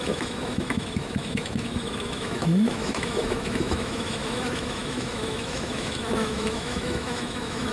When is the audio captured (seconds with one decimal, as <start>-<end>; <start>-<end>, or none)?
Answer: none